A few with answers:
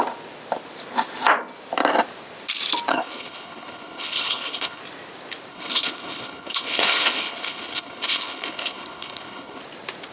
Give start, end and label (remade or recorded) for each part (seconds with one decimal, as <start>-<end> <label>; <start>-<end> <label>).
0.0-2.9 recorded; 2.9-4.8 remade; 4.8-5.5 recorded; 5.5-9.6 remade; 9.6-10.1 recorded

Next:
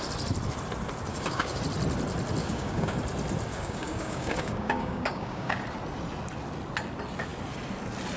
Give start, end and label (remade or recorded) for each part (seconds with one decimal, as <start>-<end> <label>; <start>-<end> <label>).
0.0-1.1 recorded; 1.1-1.6 remade; 1.6-2.4 recorded; 2.4-3.0 remade; 3.0-3.5 recorded; 3.5-5.6 remade; 5.6-8.2 recorded

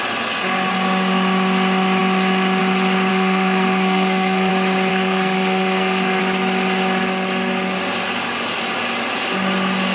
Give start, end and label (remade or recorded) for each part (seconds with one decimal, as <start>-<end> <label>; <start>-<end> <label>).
0.0-3.1 recorded; 3.1-4.5 remade; 4.5-4.9 recorded; 4.9-6.2 remade; 6.2-9.9 recorded

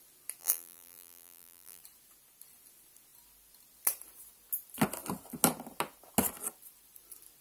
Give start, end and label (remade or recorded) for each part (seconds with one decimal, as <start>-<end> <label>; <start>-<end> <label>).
0.0-0.4 recorded; 0.4-1.8 remade; 1.8-7.4 recorded

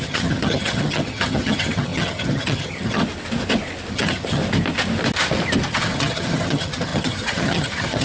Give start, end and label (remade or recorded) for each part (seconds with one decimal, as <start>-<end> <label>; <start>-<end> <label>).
0.0-3.0 remade; 3.0-3.9 recorded; 3.9-4.4 remade; 4.4-5.7 recorded; 5.7-8.0 remade

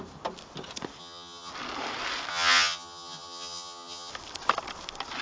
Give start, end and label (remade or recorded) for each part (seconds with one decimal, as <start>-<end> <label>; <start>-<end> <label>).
0.0-1.0 recorded; 1.0-1.5 remade; 1.5-2.3 recorded; 2.3-4.1 remade; 4.1-5.2 recorded

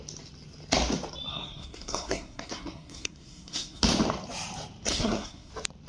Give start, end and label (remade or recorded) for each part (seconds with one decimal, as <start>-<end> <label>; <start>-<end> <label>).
0.0-1.3 recorded; 1.3-3.8 remade; 3.8-4.9 recorded; 4.9-5.5 remade; 5.5-5.9 recorded

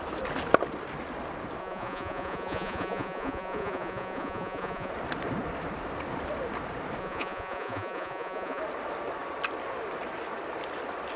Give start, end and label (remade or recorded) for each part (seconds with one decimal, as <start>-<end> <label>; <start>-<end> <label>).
0.0-1.6 recorded; 1.6-4.9 remade; 4.9-7.0 recorded; 7.0-8.6 remade; 8.6-11.2 recorded